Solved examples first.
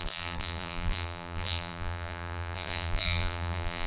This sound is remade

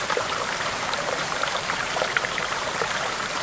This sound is remade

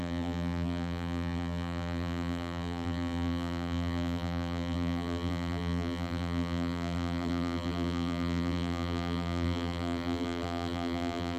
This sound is remade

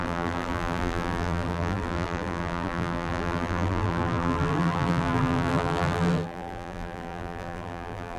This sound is remade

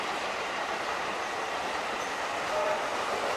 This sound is remade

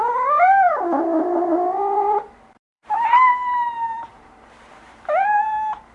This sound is remade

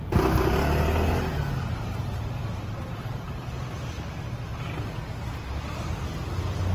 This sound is recorded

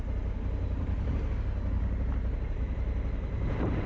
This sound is recorded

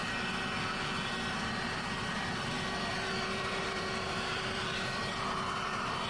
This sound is remade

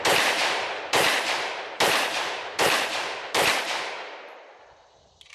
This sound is remade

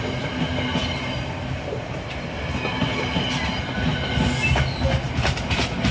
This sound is recorded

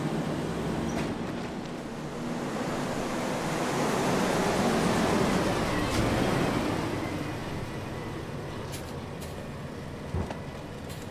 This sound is recorded